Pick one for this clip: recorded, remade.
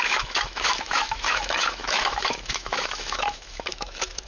remade